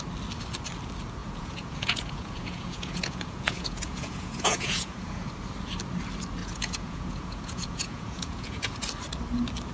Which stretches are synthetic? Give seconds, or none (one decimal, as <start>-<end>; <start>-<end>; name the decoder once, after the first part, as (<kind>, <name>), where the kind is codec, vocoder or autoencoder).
1.2-5.3 (vocoder, Vocos); 6.4-8.7